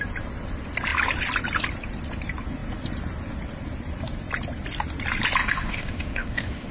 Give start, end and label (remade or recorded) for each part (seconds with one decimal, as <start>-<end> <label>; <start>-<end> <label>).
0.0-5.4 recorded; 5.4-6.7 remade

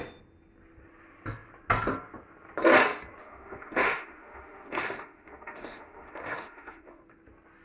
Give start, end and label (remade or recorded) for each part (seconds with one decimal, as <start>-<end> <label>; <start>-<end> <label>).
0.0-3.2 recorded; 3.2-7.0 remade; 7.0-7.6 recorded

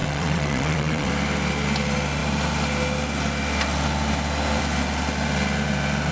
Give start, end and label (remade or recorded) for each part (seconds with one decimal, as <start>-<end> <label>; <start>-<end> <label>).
0.0-1.1 remade; 1.1-6.1 recorded

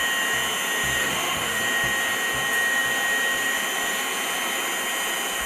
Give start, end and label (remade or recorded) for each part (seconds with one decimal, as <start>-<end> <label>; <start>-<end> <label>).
0.0-1.0 recorded; 1.0-1.6 remade; 1.6-5.5 recorded